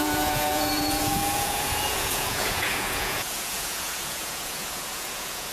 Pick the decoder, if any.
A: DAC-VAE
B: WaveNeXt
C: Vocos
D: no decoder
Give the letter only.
C